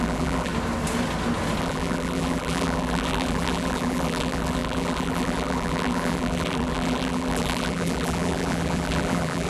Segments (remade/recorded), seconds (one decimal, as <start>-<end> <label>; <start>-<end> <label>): 0.0-0.5 remade; 0.5-1.6 recorded; 1.6-9.5 remade